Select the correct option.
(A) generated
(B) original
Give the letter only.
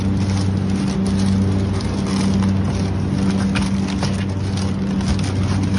B